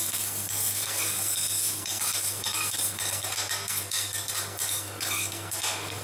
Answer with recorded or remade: remade